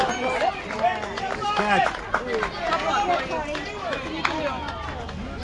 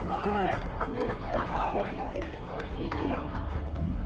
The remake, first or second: second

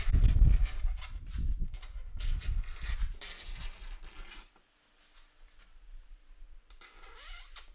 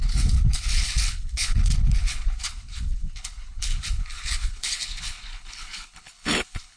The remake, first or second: second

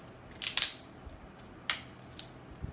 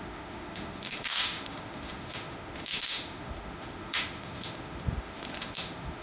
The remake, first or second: second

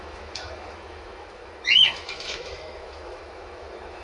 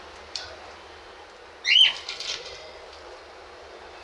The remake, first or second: first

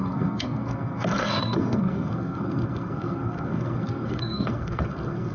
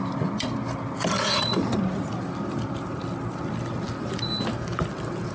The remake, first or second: first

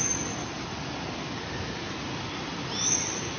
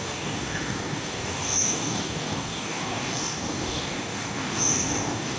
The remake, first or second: second